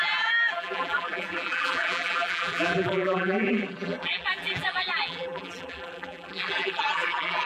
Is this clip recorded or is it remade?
remade